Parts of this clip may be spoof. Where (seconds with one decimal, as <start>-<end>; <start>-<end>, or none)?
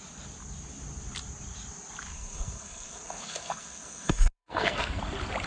2.1-5.0